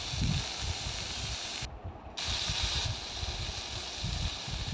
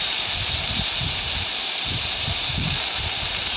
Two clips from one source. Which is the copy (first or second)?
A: second